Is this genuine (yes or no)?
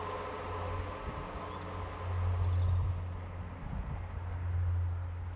yes